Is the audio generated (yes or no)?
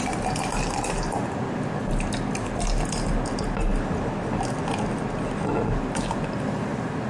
no